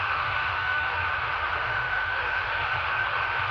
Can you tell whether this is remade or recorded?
remade